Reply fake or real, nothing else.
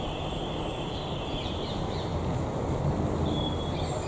real